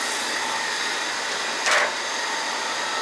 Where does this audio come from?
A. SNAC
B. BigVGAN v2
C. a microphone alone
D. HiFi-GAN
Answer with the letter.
C